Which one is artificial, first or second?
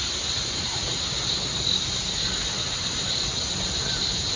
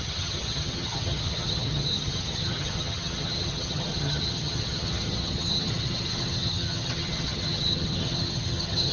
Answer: second